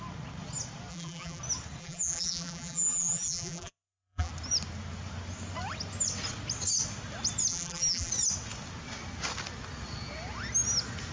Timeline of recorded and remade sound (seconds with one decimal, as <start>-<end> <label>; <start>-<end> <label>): 0.0-0.9 recorded; 0.9-1.4 remade; 1.4-1.8 recorded; 1.8-4.3 remade; 4.3-7.5 recorded; 7.5-8.1 remade; 8.1-11.1 recorded